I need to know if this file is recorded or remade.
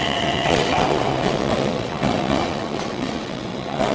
remade